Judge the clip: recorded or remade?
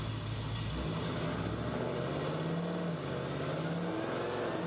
recorded